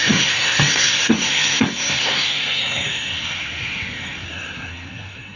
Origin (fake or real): fake